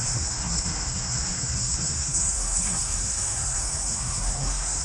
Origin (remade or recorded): remade